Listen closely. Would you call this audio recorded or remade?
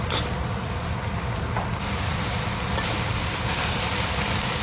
recorded